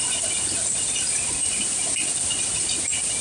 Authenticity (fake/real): real